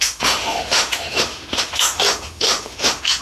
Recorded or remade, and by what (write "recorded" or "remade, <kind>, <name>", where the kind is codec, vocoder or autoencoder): remade, autoencoder, DAC-VAE